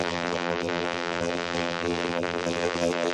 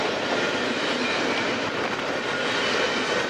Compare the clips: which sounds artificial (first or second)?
first